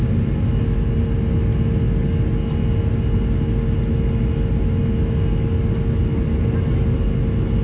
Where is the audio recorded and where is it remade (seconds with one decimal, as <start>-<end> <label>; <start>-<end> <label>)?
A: 0.0-7.6 recorded